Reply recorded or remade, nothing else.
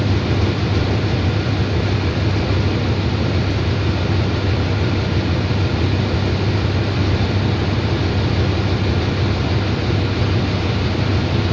recorded